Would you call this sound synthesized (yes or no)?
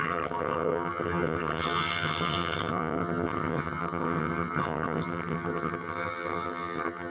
yes